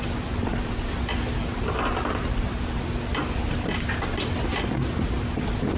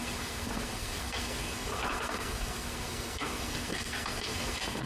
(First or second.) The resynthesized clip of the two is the second